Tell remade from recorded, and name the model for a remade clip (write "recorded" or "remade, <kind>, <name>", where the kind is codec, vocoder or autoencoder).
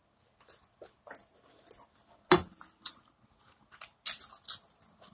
recorded